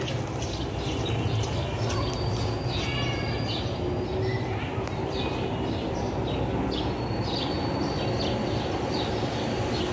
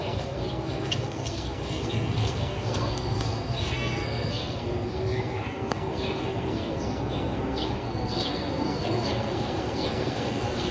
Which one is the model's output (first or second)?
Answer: second